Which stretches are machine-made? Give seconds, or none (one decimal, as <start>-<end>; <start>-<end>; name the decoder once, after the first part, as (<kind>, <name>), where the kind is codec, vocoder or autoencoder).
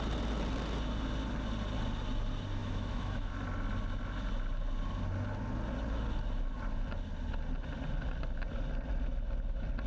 2.6-3.3 (autoencoder, DAC-VAE)